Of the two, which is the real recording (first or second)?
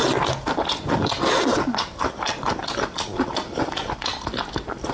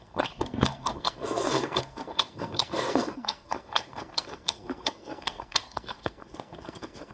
first